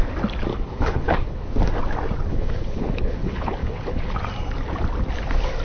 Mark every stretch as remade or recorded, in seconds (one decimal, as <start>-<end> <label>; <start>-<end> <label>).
0.0-0.5 recorded; 0.5-1.5 remade; 1.5-2.3 recorded; 2.3-4.2 remade; 4.2-5.6 recorded